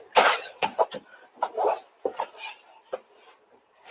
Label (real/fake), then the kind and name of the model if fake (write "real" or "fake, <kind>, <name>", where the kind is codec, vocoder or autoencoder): fake, vocoder, BigVGAN v2